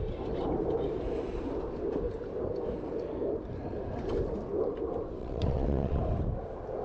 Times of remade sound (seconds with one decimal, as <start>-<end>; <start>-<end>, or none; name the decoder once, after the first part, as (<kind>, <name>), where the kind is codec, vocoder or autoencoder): 5.2-6.0 (vocoder, WaveNeXt)